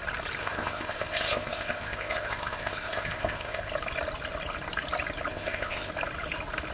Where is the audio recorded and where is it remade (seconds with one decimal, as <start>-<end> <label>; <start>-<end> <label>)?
0.0-0.4 recorded; 0.4-3.7 remade; 3.7-5.3 recorded; 5.3-5.9 remade; 5.9-6.7 recorded